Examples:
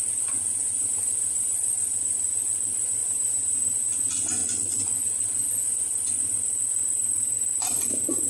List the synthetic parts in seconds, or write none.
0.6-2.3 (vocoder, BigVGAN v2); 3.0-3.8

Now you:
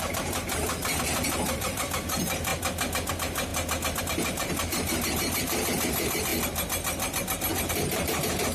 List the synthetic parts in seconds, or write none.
0.0-2.5 (vocoder, BigVGAN v2); 3.1-3.5; 4.0-6.3; 7.7-8.5

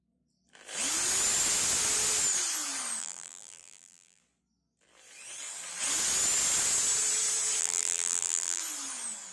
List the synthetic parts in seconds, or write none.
3.0-4.2 (vocoder, BigVGAN v2); 7.6-8.6